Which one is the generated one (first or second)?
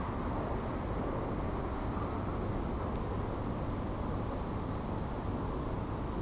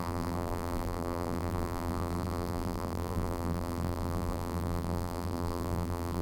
second